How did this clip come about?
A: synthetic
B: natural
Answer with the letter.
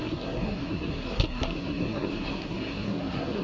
A